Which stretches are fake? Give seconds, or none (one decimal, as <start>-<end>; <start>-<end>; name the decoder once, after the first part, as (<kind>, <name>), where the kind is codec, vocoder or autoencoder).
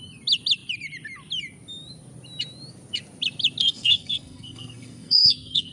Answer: 3.6-5.7 (codec, SNAC)